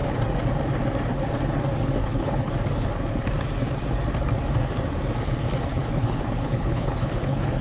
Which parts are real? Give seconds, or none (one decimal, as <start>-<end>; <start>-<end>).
0.0-2.0; 2.5-5.7

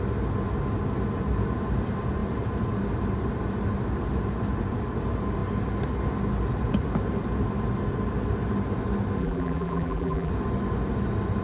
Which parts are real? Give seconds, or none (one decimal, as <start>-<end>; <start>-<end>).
0.0-9.2; 10.3-11.4